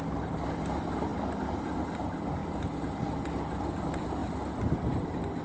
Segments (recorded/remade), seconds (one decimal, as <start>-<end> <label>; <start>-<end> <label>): 0.0-5.4 recorded